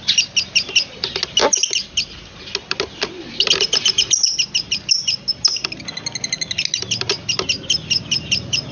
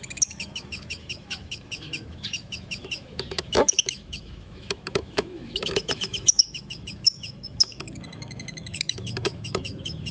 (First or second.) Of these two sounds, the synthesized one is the second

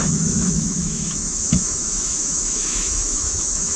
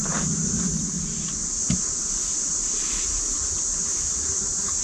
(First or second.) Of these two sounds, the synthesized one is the first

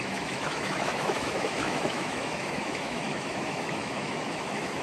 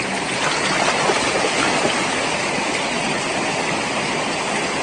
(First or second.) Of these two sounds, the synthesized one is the first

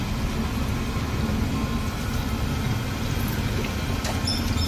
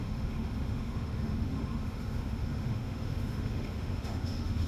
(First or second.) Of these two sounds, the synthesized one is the second